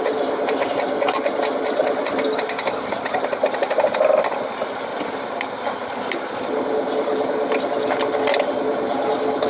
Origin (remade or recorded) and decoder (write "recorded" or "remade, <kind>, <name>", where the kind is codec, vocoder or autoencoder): recorded